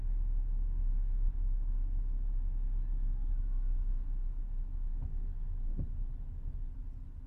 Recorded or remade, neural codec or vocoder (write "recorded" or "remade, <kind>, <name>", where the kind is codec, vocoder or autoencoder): recorded